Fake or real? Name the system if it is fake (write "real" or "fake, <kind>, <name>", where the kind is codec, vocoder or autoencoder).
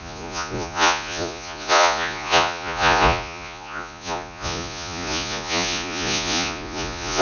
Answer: fake, vocoder, Vocos